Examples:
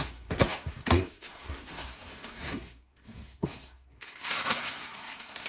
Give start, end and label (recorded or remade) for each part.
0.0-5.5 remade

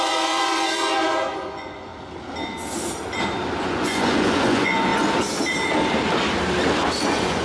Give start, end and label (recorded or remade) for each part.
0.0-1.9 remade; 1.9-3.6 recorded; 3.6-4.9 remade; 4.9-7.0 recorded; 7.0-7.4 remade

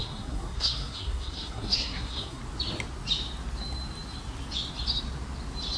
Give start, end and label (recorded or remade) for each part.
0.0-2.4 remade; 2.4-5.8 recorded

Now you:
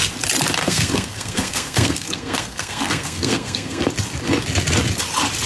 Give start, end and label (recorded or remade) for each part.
0.0-0.6 recorded; 0.6-3.9 remade; 3.9-5.5 recorded

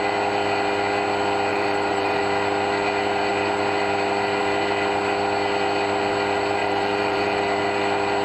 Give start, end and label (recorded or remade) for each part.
0.0-1.5 recorded; 1.5-2.2 remade; 2.2-6.6 recorded; 6.6-7.4 remade; 7.4-8.2 recorded

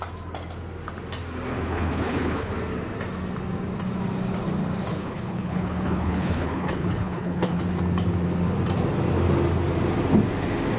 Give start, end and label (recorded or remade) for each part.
0.0-1.5 recorded; 1.5-2.5 remade; 2.5-4.9 recorded; 4.9-7.6 remade; 7.6-10.8 recorded